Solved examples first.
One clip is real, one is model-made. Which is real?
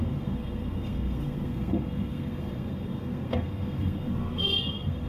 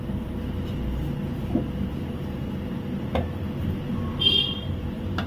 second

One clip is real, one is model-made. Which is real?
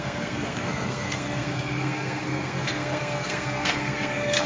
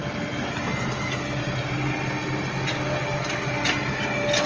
second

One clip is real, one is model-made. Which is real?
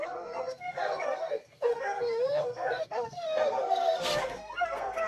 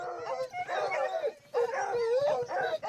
second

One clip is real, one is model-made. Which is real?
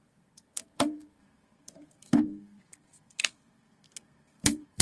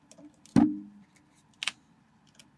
second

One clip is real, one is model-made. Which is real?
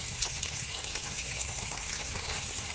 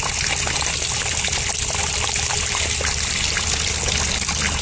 second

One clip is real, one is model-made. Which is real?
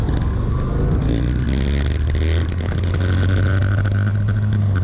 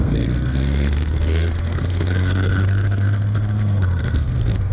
first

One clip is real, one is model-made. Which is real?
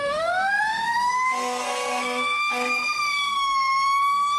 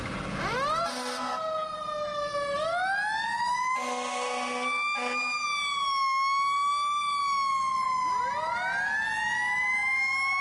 second